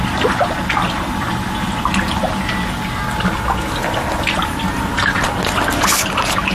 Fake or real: real